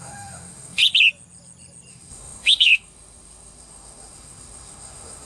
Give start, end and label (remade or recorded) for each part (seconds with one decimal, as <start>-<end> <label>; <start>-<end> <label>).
0.0-0.8 remade; 0.8-1.9 recorded; 1.9-5.3 remade